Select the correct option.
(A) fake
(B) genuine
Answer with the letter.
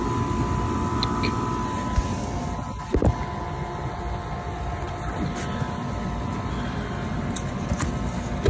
B